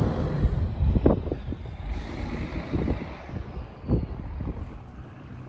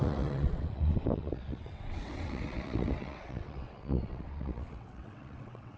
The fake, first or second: second